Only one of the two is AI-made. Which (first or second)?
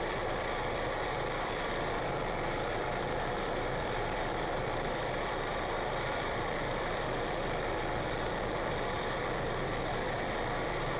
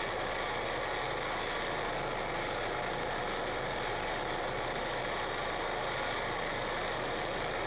first